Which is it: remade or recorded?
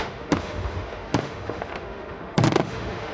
remade